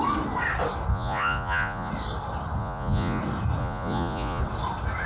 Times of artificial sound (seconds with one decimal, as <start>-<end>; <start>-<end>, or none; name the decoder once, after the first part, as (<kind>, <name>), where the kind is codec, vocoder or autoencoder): 0.9-1.9 (vocoder, Vocos); 2.6-3.2; 3.6-4.4